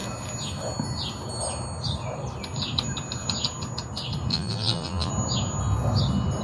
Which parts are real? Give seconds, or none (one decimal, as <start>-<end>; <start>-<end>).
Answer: 0.0-4.3; 5.1-6.4